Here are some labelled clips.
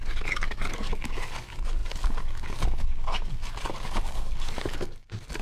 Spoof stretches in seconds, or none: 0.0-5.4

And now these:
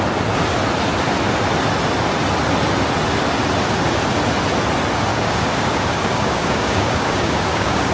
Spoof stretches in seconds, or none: 5.1-7.9